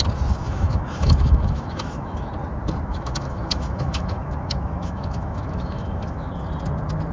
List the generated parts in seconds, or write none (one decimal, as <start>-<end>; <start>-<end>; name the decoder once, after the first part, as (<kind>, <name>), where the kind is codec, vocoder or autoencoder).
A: 0.4-2.3 (autoencoder, DAC-VAE); 2.9-6.3

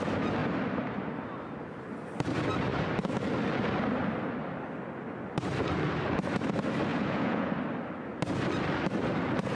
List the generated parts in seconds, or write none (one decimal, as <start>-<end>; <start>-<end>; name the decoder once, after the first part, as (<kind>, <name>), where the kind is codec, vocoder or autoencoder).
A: 6.9-7.5 (vocoder, Vocos)

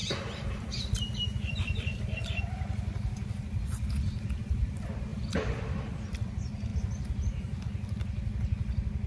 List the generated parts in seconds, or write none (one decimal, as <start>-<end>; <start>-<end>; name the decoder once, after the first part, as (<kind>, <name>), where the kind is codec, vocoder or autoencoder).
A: 0.0-2.4 (vocoder, BigVGAN v2); 5.1-6.3